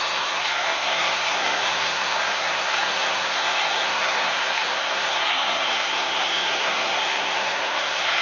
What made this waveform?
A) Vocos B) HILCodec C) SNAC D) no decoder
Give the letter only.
C